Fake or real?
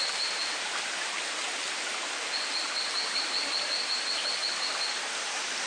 real